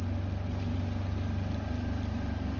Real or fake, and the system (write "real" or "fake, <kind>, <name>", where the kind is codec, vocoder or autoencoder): real